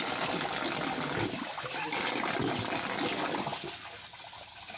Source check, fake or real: real